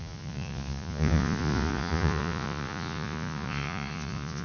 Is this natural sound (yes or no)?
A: no